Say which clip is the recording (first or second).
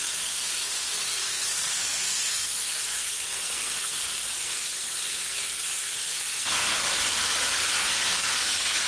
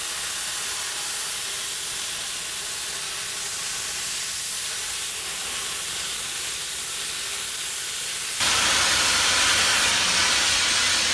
second